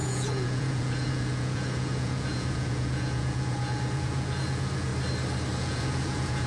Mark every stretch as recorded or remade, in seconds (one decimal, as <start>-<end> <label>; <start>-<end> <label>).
0.0-4.9 remade; 4.9-5.6 recorded; 5.6-6.5 remade